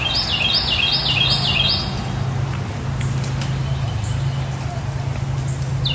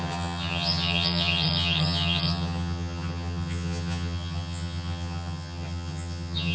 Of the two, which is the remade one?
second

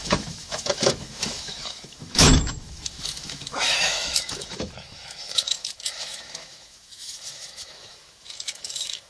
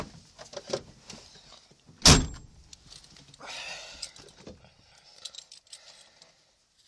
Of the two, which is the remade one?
first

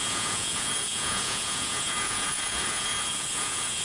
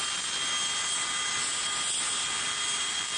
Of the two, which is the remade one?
first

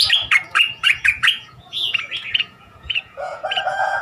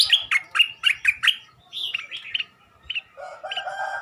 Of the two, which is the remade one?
first